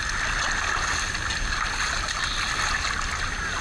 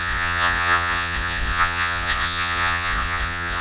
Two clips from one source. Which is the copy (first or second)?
second